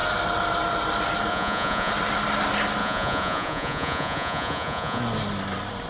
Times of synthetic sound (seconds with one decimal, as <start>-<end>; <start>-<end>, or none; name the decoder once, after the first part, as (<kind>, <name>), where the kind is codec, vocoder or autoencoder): 1.3-1.9 (vocoder, Vocos); 2.8-5.0